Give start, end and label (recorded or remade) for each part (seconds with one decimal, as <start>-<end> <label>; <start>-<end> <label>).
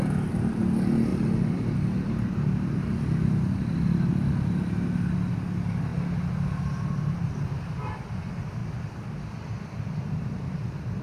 0.0-1.1 recorded; 1.1-2.9 remade; 2.9-8.6 recorded; 8.6-9.6 remade; 9.6-11.0 recorded